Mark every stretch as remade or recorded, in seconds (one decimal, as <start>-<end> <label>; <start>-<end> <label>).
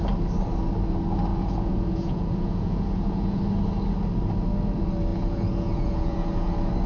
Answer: 0.0-1.3 recorded; 1.3-3.4 remade; 3.4-5.1 recorded; 5.1-6.5 remade; 6.5-6.9 recorded